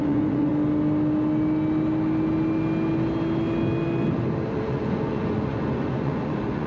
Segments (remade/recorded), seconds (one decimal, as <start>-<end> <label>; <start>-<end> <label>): 0.0-0.5 remade; 0.5-4.5 recorded; 4.5-6.7 remade